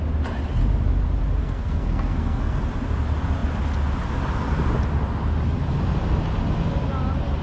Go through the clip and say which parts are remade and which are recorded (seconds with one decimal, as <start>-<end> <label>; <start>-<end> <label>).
0.0-1.4 recorded; 1.4-2.6 remade; 2.6-7.4 recorded